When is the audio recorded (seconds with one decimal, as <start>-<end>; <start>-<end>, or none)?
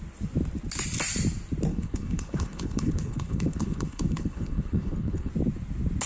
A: 0.0-1.7; 5.3-6.1